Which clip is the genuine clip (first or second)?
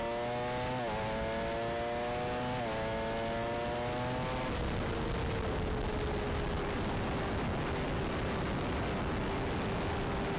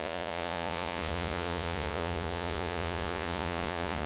first